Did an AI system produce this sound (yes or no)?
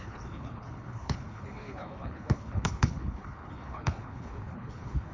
yes